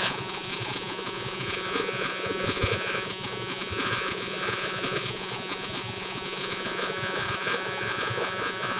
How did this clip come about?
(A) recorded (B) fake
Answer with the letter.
B